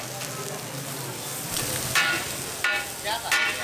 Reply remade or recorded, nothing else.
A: recorded